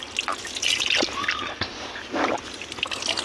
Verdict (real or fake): real